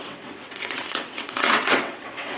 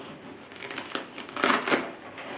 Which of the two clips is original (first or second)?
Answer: second